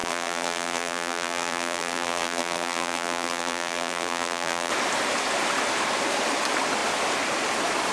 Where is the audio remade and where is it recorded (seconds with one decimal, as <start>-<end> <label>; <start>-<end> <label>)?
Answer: 0.0-4.7 remade; 4.7-7.9 recorded